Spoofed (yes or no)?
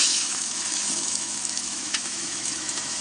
yes